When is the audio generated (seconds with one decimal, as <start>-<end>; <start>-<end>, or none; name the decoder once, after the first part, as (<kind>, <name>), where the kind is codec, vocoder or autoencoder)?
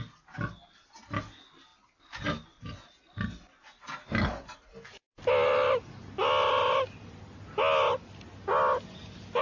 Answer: none